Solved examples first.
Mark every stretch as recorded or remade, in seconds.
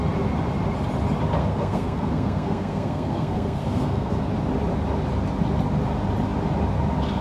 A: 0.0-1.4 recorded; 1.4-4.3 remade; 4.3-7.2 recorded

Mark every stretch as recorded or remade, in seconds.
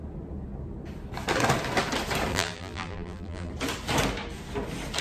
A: 0.0-2.3 recorded; 2.3-3.5 remade; 3.5-5.0 recorded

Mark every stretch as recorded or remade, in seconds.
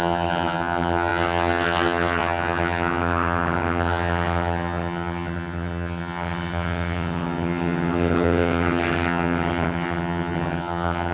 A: 0.0-11.1 remade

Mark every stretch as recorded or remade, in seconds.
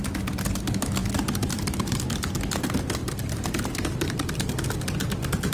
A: 0.0-1.0 recorded; 1.0-2.0 remade; 2.0-3.0 recorded; 3.0-4.7 remade; 4.7-5.5 recorded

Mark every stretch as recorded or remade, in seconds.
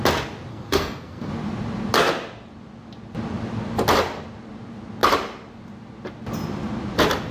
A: 0.0-0.5 recorded; 0.5-1.3 remade; 1.3-7.3 recorded